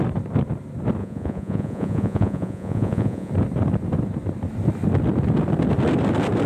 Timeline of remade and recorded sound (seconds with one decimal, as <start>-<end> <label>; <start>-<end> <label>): 0.0-1.0 recorded; 1.0-3.3 remade; 3.3-6.5 recorded